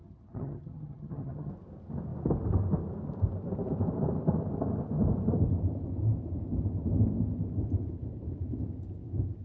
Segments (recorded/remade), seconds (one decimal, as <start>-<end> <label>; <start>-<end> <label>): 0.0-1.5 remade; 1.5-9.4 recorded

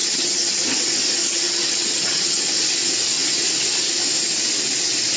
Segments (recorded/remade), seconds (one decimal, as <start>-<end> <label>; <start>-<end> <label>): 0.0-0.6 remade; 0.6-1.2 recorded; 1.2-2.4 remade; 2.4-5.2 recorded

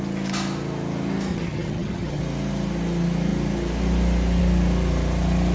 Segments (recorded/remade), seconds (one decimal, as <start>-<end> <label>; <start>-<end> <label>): 0.0-1.3 recorded; 1.3-2.2 remade; 2.2-5.5 recorded

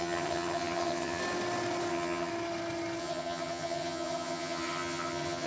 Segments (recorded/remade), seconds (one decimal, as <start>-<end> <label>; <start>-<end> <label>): 0.0-1.2 remade; 1.2-1.9 recorded; 1.9-2.3 remade; 2.3-3.0 recorded; 3.0-5.5 remade

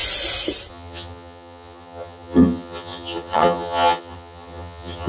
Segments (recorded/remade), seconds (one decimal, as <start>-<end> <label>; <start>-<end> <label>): 0.0-0.7 recorded; 0.7-5.1 remade

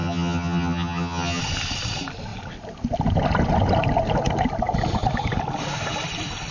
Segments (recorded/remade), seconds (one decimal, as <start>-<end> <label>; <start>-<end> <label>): 0.0-1.4 remade; 1.4-6.5 recorded